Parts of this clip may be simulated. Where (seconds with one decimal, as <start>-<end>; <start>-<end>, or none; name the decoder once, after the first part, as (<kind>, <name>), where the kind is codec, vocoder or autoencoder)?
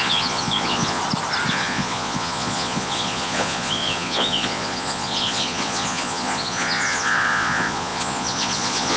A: 0.0-1.0 (vocoder, Vocos); 1.5-9.0